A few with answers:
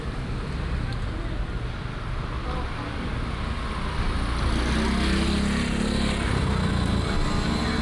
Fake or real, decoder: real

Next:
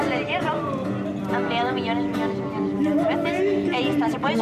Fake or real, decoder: real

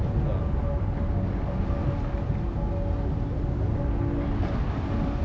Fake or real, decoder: real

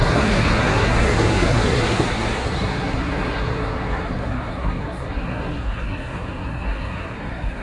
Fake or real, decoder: fake, codec, SNAC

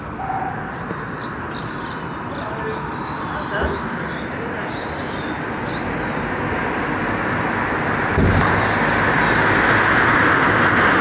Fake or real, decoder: real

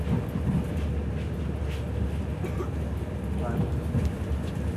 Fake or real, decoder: real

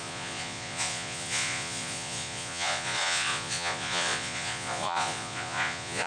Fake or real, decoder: fake, vocoder, Vocos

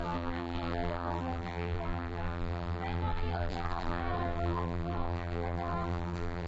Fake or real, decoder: fake, vocoder, BigVGAN v2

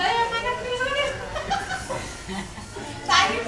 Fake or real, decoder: real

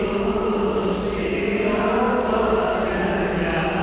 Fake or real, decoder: real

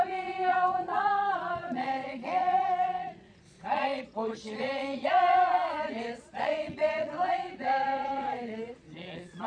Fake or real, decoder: fake, vocoder, Vocos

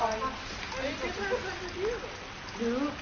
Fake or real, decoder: real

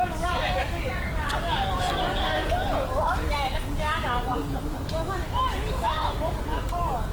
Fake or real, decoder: fake, codec, DAC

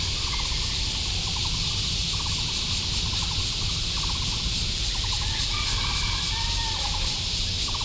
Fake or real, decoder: fake, vocoder, BigVGAN v2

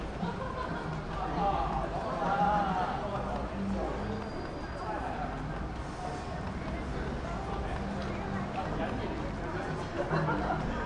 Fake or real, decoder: real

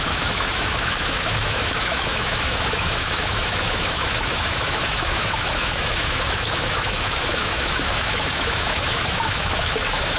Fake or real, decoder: fake, autoencoder, DAC-VAE